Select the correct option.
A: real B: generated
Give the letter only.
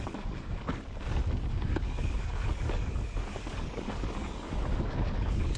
B